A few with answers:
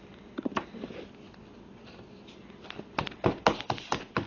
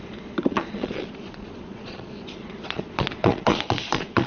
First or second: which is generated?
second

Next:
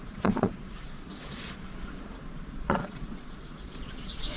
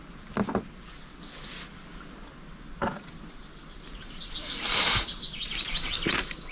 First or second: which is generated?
first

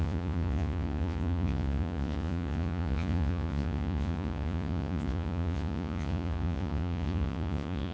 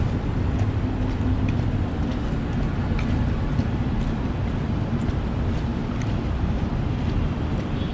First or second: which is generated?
first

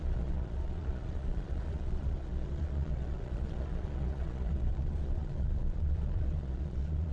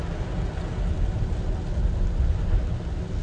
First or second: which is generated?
first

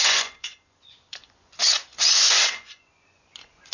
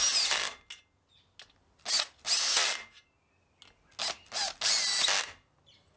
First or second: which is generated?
first